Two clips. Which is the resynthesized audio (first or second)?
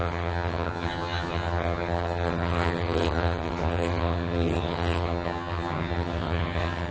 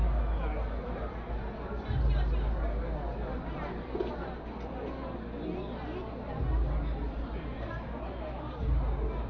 first